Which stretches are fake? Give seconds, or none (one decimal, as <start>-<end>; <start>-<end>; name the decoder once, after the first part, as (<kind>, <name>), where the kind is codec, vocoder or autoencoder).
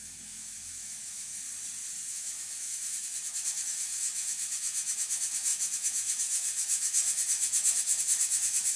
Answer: 0.0-1.3 (autoencoder, DAC-VAE); 2.1-8.8